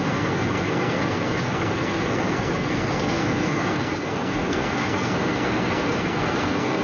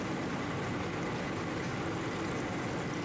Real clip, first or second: second